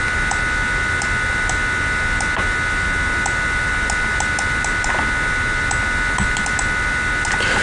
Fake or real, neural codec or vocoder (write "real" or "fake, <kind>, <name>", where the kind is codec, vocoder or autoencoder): real